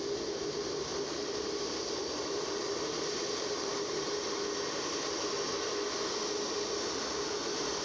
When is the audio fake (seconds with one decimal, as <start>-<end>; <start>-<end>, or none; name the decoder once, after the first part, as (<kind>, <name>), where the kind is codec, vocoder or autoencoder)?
0.9-4.1 (vocoder, BigVGAN v2)

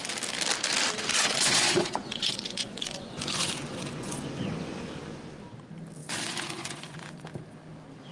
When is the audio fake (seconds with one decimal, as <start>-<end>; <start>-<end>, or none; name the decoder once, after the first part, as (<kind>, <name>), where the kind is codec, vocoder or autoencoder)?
1.1-4.8 (vocoder, Vocos); 6.0-7.3

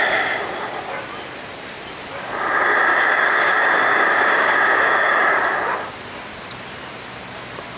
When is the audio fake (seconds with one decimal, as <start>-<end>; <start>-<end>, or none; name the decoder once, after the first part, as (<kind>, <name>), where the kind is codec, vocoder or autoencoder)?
2.9-5.4 (codec, DAC)

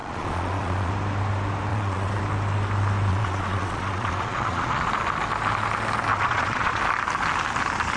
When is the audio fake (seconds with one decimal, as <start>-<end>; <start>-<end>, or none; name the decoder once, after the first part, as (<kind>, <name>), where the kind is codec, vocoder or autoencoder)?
0.0-0.9 (vocoder, Vocos); 1.7-2.2; 3.1-4.9; 6.1-6.8

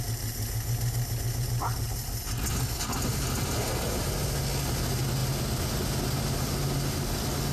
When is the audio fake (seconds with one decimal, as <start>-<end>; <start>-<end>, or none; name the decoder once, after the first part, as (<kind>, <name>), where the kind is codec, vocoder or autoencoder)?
none

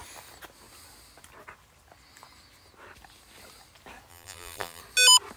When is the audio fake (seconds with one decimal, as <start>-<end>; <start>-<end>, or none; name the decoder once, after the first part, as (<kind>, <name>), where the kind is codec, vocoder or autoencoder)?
4.1-4.8 (vocoder, BigVGAN v2)